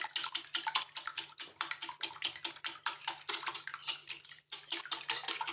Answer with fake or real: real